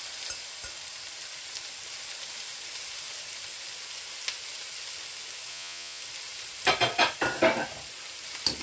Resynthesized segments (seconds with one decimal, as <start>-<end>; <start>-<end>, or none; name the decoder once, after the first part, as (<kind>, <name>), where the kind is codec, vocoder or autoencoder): 5.5-6.0 (vocoder, Vocos)